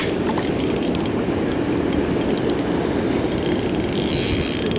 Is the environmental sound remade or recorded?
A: recorded